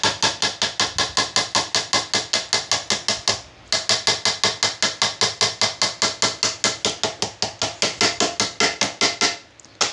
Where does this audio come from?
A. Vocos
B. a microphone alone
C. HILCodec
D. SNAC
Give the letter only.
B